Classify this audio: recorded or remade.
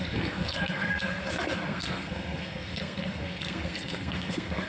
remade